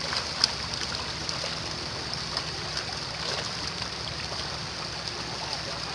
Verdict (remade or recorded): recorded